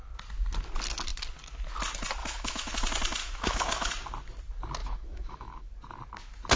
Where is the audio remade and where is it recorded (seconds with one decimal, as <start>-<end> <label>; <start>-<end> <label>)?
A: 0.0-2.2 recorded; 2.2-2.7 remade; 2.7-3.2 recorded; 3.2-3.9 remade; 3.9-4.8 recorded; 4.8-5.7 remade; 5.7-6.6 recorded